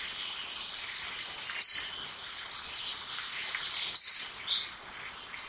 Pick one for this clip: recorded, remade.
recorded